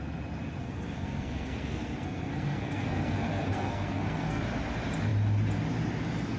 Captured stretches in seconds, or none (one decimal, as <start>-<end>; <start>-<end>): 0.0-0.6; 4.4-6.4

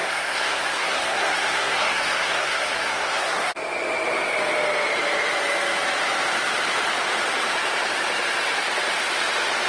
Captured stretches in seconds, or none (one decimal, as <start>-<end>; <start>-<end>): 3.5-9.7

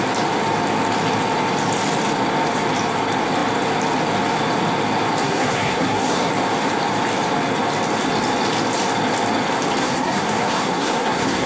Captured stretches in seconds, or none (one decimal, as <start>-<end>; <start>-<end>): 0.0-5.2; 6.3-9.8

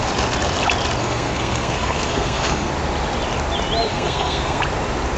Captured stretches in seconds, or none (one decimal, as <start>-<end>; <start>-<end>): 0.0-1.0; 2.7-3.9; 4.6-5.2

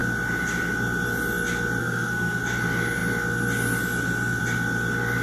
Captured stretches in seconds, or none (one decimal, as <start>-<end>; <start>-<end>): 0.0-1.8; 2.4-5.2

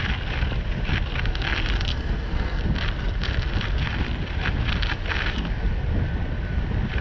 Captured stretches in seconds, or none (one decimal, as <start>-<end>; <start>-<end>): 0.0-1.9; 2.6-7.0

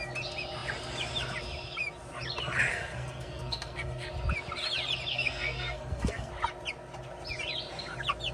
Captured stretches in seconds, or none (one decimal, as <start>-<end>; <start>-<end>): 0.0-2.7; 4.1-5.1; 6.3-8.3

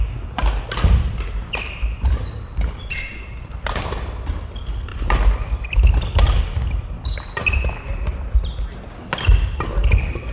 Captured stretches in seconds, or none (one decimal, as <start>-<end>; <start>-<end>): 0.0-10.3